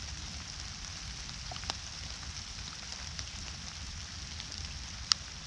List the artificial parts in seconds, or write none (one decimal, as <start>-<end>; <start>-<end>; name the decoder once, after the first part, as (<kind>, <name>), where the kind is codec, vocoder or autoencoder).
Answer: none